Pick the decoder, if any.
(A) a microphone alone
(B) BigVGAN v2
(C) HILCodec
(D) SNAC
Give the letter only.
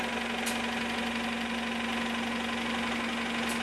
A